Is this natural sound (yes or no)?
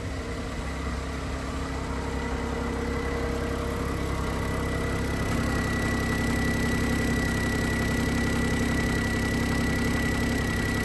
yes